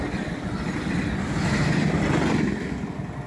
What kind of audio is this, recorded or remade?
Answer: recorded